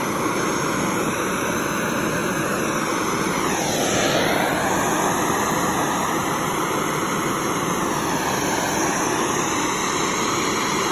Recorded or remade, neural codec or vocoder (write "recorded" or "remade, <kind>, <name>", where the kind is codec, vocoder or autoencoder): recorded